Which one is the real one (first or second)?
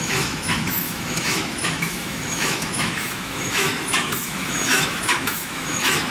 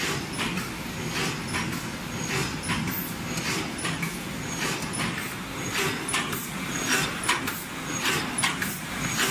second